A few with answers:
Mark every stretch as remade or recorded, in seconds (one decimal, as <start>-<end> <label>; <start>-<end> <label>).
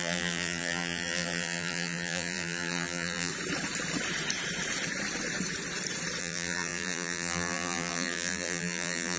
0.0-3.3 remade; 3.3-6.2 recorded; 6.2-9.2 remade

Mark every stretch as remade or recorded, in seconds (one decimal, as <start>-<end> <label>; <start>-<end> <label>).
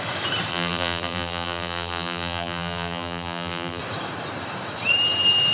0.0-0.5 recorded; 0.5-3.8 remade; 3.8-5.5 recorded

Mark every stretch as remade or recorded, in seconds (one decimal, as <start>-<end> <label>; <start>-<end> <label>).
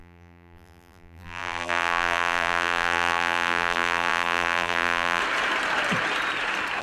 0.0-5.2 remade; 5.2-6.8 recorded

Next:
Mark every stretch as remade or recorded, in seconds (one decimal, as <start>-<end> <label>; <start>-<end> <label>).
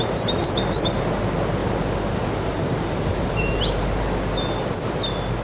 0.0-0.4 recorded; 0.4-1.2 remade; 1.2-1.6 recorded; 1.6-4.8 remade; 4.8-5.4 recorded